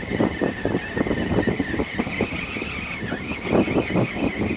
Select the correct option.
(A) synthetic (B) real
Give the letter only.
B